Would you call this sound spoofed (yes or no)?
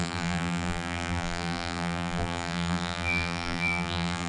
yes